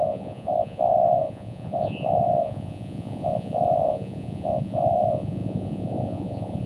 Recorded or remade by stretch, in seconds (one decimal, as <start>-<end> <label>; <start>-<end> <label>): 0.0-6.7 remade